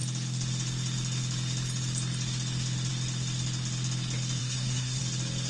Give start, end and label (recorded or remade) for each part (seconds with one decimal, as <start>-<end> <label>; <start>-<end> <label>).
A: 0.0-4.4 recorded; 4.4-5.0 remade; 5.0-5.5 recorded